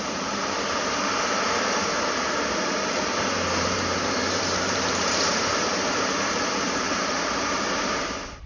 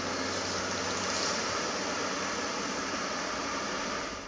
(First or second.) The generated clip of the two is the first